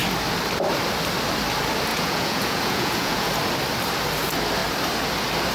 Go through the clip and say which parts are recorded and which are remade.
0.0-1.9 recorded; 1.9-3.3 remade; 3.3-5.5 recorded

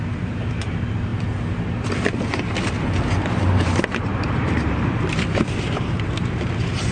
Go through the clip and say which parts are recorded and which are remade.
0.0-6.9 recorded

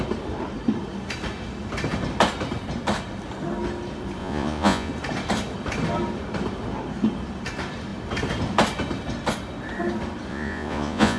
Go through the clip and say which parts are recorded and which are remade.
0.0-4.2 recorded; 4.2-4.9 remade; 4.9-10.3 recorded; 10.3-11.2 remade

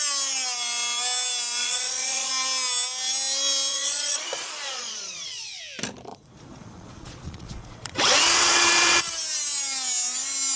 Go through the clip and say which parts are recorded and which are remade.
0.0-1.6 recorded; 1.6-2.3 remade; 2.3-3.7 recorded; 3.7-5.6 remade; 5.6-6.1 recorded; 6.1-9.0 remade; 9.0-10.6 recorded

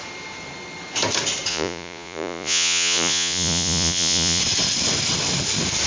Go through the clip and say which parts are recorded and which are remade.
0.0-1.5 recorded; 1.5-4.4 remade; 4.4-5.9 recorded

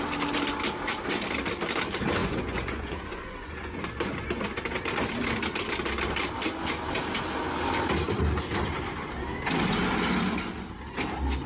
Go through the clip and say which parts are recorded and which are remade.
0.0-2.2 recorded; 2.2-3.8 remade; 3.8-11.5 recorded

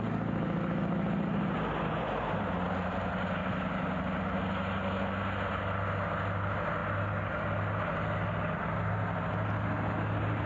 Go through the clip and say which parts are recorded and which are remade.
0.0-10.5 recorded

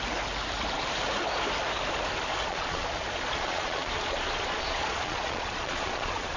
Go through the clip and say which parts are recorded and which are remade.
0.0-2.4 recorded; 2.4-6.4 remade